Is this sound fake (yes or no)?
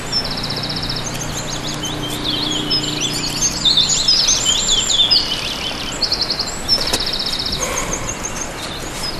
no